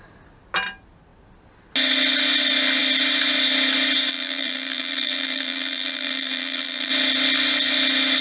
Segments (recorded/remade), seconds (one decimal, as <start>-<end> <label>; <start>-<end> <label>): 0.0-4.1 recorded; 4.1-6.9 remade; 6.9-8.2 recorded